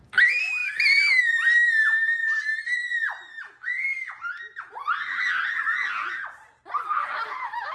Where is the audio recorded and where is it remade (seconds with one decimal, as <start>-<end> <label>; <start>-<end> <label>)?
0.0-7.7 recorded

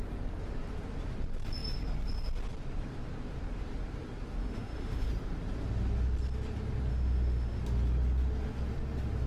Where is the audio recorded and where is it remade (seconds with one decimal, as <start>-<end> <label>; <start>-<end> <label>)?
0.0-4.4 recorded; 4.4-5.1 remade; 5.1-6.9 recorded; 6.9-7.6 remade; 7.6-9.3 recorded

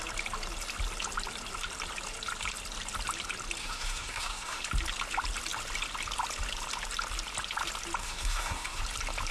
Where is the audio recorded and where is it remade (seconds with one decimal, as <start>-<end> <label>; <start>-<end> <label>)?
0.0-3.6 recorded; 3.6-4.6 remade; 4.6-8.0 recorded; 8.0-8.8 remade; 8.8-9.3 recorded

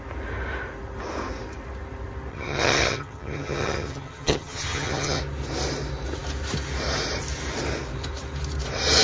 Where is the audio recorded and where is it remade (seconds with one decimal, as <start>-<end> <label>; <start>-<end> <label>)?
0.0-2.3 recorded; 2.3-5.2 remade; 5.2-9.0 recorded

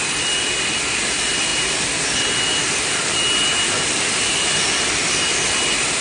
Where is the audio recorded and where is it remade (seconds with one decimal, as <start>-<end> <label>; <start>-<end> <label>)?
0.0-6.0 remade